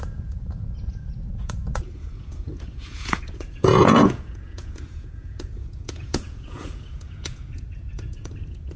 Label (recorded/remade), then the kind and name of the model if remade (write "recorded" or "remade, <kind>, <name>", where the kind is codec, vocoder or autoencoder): remade, vocoder, Vocos